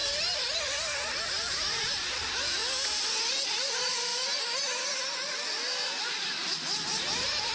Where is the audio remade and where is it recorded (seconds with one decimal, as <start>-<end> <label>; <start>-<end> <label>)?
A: 0.0-2.6 remade; 2.6-3.5 recorded; 3.5-4.1 remade; 4.1-5.3 recorded; 5.3-7.5 remade